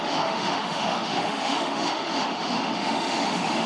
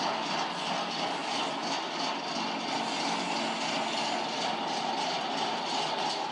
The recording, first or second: second